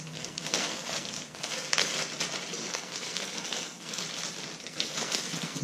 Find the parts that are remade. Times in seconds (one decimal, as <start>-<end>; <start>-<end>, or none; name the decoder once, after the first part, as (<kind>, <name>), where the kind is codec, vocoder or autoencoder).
0.0-1.9 (codec, SNAC); 2.7-4.0; 4.6-5.6